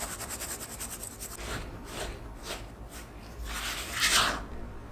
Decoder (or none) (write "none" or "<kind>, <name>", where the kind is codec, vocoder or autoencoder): none